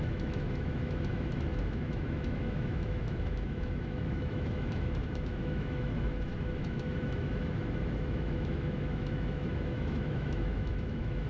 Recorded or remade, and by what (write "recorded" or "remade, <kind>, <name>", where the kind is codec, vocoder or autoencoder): remade, autoencoder, DAC-VAE